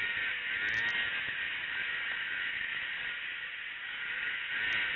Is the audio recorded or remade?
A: recorded